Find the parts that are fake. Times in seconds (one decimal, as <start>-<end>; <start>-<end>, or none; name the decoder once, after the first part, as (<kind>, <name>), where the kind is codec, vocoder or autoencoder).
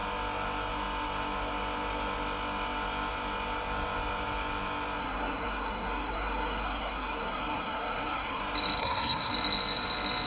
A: 5.0-8.4 (codec, SNAC); 8.8-9.3